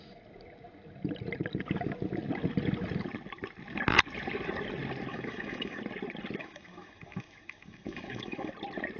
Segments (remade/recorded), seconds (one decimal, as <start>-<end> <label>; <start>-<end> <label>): 0.0-5.1 recorded; 5.1-5.8 remade; 5.8-6.4 recorded; 6.4-8.5 remade; 8.5-9.0 recorded